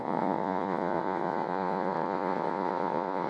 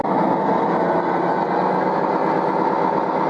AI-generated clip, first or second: first